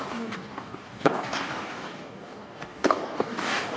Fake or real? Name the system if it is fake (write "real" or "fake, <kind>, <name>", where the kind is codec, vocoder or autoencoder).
fake, codec, DAC